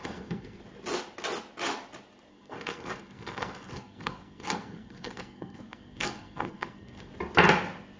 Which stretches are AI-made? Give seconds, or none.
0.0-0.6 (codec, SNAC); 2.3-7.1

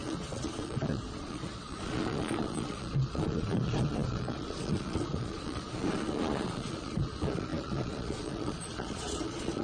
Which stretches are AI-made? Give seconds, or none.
0.0-9.6 (vocoder, Vocos)

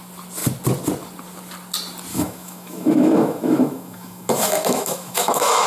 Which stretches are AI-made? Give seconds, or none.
2.1-5.7 (autoencoder, DAC-VAE)

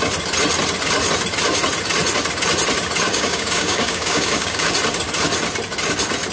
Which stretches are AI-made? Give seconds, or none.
3.1-4.7 (codec, DAC)

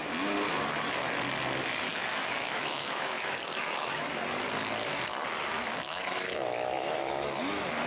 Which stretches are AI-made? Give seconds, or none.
1.9-4.1 (autoencoder, DAC-VAE); 5.6-7.4

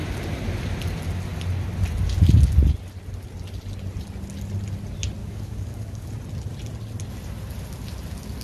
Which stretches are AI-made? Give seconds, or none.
5.2-6.1 (codec, DAC)

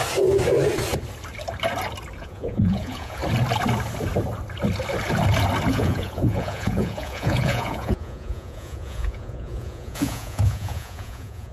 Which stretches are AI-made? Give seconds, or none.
2.2-3.2 (vocoder, Vocos); 5.7-11.5

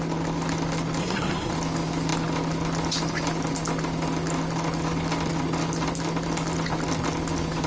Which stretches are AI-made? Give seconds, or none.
1.0-1.5 (codec, SNAC)